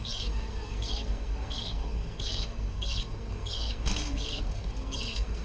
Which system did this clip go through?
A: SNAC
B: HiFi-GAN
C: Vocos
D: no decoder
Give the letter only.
A